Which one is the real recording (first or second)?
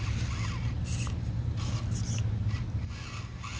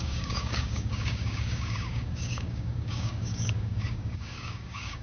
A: first